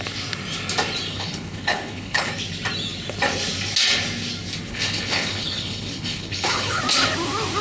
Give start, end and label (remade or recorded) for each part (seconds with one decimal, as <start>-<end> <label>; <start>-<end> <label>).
0.0-1.1 recorded; 1.1-2.3 remade; 2.3-4.7 recorded; 4.7-6.8 remade; 6.8-7.6 recorded